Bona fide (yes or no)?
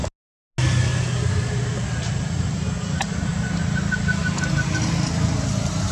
yes